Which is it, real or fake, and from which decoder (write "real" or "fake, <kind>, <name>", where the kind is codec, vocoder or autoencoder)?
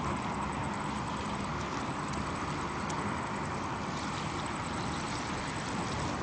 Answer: real